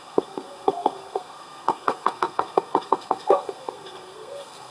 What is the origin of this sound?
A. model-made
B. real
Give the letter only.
A